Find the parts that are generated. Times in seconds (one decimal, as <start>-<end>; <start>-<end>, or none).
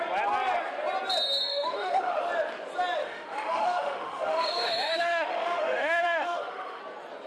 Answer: 1.5-2.2; 3.0-6.8